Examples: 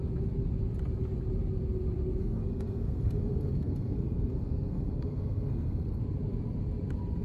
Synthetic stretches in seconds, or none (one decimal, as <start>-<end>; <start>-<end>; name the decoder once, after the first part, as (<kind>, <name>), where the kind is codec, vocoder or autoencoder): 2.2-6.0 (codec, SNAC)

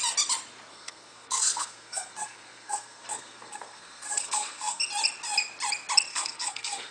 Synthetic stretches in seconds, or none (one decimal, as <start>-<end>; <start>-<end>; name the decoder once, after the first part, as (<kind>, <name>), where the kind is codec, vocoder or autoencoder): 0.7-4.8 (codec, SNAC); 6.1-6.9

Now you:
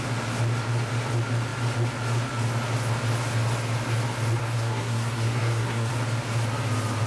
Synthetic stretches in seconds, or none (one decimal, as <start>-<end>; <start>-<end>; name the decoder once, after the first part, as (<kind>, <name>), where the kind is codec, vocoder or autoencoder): 4.4-5.9 (codec, SNAC)